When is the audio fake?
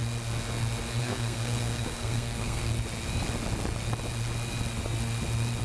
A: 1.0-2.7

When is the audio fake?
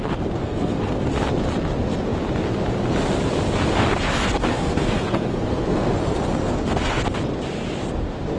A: 0.4-1.1; 4.5-5.9; 6.4-7.0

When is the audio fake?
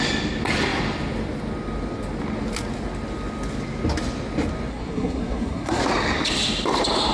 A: 4.7-5.8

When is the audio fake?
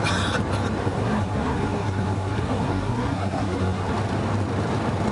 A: 0.8-3.9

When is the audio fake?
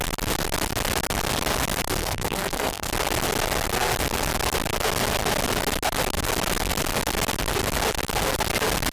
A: 2.0-2.9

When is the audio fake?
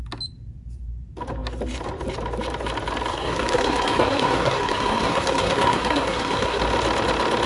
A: 3.1-6.6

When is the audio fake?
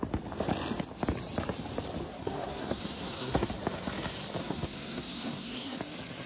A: 2.1-3.5; 4.4-5.8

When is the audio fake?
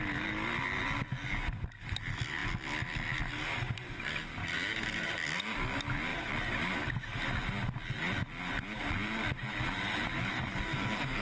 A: 10.3-11.2